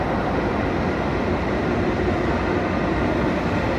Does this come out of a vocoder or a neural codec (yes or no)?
no